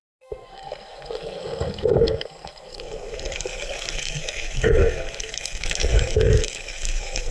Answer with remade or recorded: remade